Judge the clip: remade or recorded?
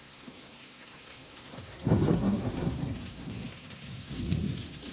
remade